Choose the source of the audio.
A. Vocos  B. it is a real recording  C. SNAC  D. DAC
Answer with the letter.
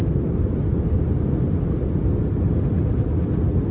B